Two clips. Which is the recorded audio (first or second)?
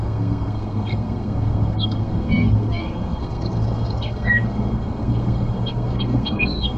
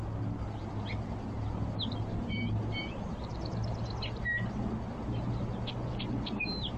second